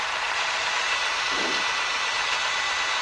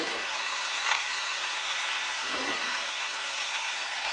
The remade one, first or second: second